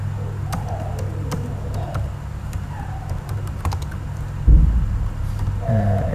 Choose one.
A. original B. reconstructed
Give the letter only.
A